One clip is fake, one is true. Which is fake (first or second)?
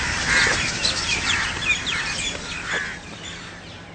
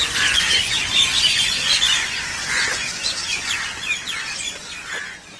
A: second